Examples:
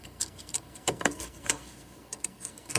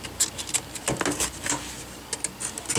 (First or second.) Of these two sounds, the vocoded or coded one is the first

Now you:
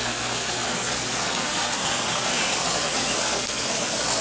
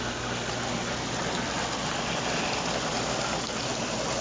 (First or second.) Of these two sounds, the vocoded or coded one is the first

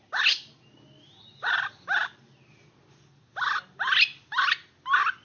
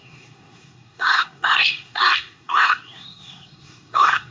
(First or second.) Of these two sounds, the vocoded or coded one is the second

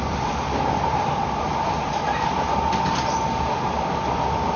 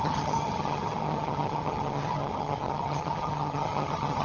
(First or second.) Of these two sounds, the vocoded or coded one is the second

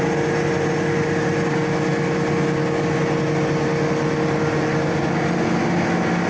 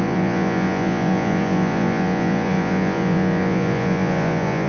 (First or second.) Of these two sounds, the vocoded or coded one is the second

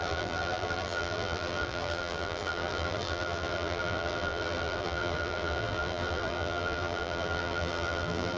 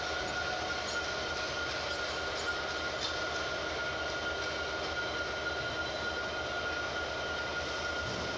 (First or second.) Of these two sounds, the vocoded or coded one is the first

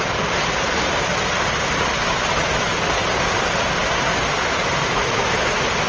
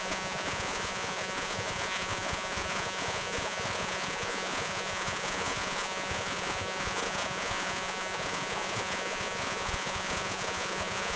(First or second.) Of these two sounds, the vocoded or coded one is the second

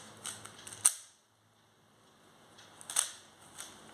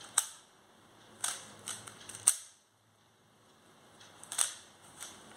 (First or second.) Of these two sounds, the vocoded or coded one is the second